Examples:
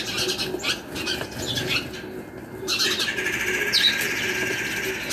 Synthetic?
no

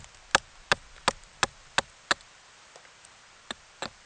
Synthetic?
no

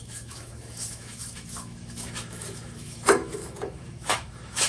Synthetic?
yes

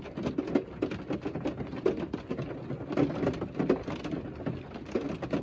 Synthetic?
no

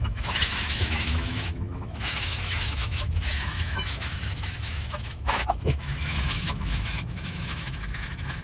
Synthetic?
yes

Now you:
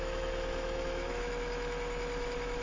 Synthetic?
yes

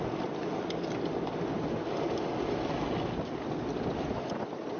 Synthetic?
no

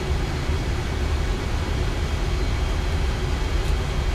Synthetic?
no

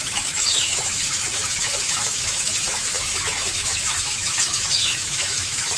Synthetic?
yes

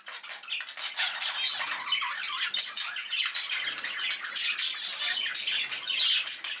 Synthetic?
no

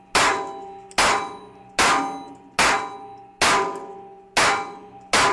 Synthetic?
no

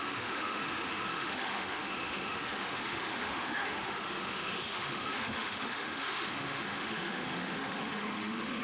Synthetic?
yes